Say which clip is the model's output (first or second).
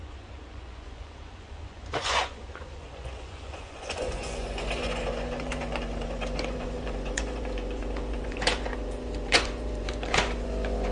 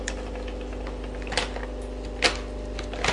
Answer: first